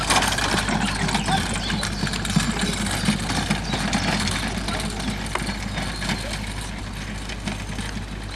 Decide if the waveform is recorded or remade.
recorded